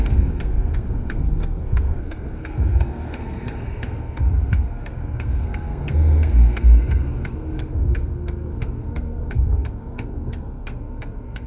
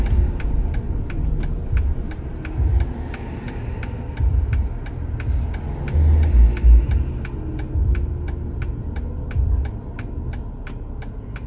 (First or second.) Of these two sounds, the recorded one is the second